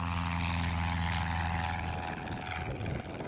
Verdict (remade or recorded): recorded